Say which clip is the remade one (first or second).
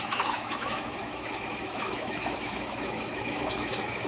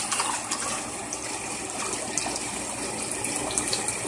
first